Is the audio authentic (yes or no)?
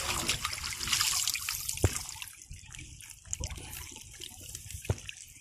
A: yes